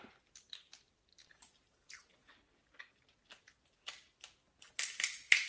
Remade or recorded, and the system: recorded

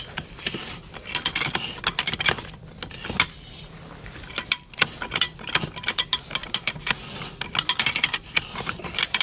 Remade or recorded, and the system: recorded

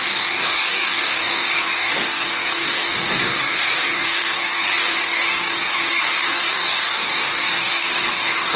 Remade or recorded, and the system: remade, codec, DAC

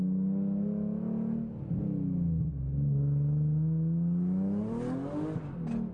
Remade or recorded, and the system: recorded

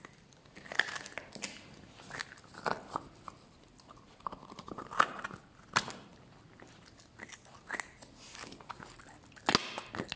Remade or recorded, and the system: recorded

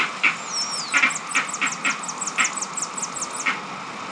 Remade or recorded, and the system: recorded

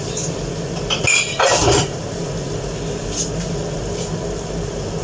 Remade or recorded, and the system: recorded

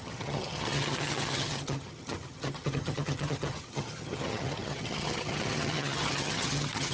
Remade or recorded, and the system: remade, vocoder, HiFi-GAN